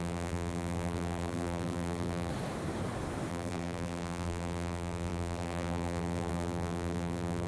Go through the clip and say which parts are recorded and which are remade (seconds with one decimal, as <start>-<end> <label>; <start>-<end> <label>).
0.0-2.3 remade; 2.3-3.3 recorded; 3.3-7.5 remade